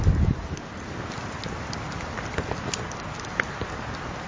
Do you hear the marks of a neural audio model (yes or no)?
no